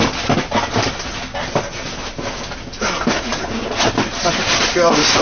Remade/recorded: recorded